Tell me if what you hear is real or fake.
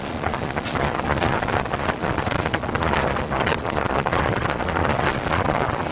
fake